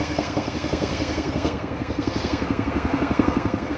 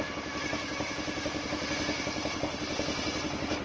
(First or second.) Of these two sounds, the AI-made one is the first